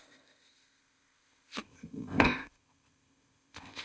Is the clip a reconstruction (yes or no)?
yes